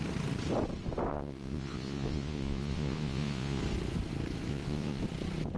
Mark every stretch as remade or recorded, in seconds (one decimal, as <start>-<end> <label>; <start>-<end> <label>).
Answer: 0.0-1.1 recorded; 1.1-3.6 remade; 3.6-4.5 recorded; 4.5-5.0 remade; 5.0-5.6 recorded